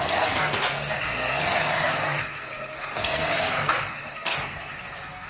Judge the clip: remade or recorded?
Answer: remade